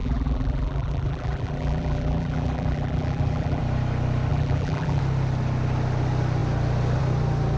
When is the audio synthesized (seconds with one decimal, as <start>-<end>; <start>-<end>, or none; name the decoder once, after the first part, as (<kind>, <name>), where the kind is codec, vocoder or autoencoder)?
0.0-3.6 (vocoder, BigVGAN v2); 4.3-5.0